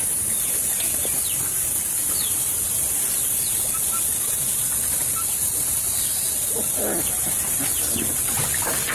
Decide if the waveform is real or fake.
real